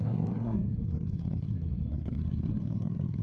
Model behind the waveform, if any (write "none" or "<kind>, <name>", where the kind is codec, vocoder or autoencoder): codec, SNAC